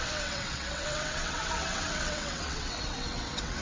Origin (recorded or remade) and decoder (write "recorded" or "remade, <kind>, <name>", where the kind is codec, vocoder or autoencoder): remade, vocoder, WaveNeXt